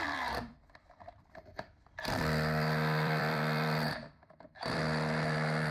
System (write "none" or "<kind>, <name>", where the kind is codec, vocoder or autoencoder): vocoder, BigVGAN v2